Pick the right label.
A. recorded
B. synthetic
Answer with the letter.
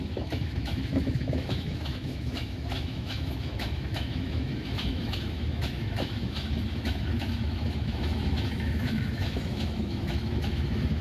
B